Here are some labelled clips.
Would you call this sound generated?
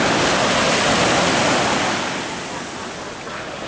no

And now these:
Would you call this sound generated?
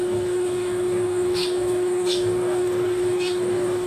yes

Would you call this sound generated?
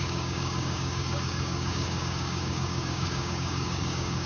yes